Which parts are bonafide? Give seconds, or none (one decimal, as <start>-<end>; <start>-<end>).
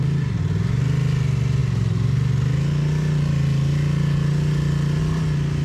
0.0-5.6